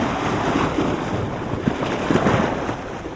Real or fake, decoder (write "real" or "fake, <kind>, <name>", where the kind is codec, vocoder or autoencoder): real